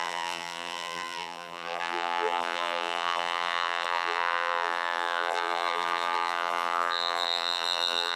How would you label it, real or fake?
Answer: fake